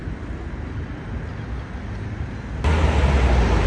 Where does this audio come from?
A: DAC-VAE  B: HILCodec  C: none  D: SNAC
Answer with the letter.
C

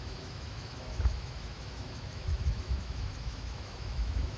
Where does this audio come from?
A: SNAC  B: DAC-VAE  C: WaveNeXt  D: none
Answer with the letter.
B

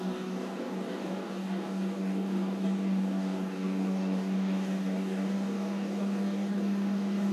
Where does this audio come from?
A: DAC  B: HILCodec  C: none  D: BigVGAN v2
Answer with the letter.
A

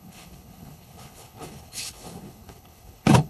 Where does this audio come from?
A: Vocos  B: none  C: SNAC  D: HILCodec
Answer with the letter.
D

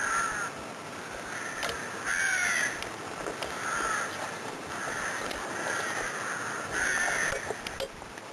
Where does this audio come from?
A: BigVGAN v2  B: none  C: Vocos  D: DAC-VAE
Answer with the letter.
B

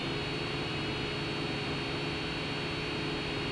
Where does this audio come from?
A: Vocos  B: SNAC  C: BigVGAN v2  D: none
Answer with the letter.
D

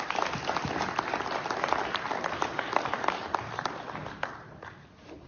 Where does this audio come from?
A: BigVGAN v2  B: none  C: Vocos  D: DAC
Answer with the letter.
B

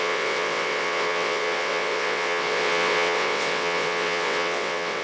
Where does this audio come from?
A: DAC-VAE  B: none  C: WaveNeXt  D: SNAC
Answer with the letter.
C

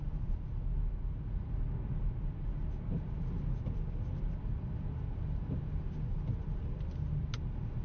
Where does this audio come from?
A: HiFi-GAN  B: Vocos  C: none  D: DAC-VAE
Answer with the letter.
C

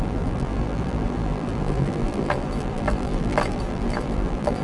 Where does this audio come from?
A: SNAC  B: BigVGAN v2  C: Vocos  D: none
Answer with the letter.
B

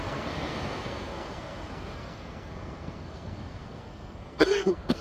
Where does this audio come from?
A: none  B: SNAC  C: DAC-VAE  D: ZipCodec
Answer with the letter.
B